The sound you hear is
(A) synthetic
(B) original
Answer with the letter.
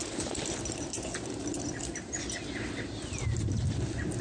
B